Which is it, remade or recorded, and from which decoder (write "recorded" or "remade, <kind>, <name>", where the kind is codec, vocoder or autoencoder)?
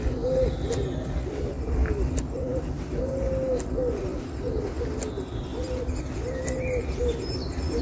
recorded